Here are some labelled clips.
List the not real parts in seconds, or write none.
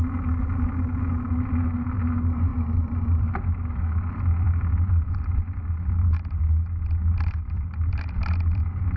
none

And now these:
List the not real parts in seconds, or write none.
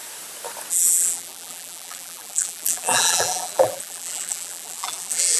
0.7-5.4 (vocoder, BigVGAN v2)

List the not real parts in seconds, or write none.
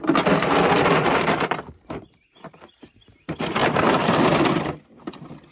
0.0-5.5 (vocoder, BigVGAN v2)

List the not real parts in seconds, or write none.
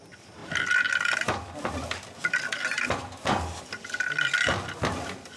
0.4-3.6 (vocoder, BigVGAN v2)